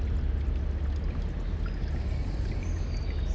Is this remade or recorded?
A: recorded